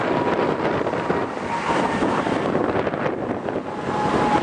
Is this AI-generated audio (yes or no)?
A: no